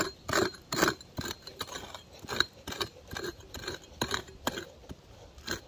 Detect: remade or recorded recorded